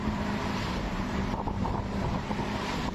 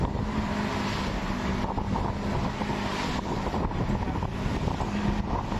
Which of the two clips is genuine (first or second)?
second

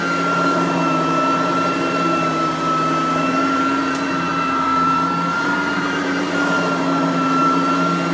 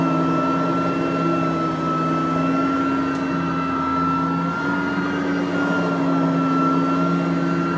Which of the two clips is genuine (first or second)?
second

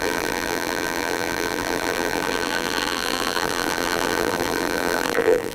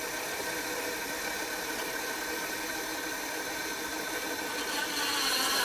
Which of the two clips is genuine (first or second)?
second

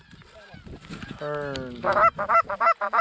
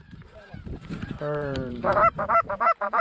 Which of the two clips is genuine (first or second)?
first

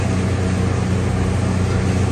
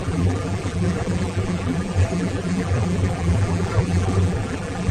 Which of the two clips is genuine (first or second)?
first